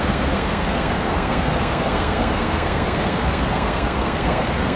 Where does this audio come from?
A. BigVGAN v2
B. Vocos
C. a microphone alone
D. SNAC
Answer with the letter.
D